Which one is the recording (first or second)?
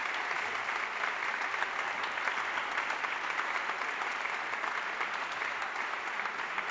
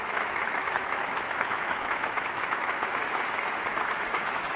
first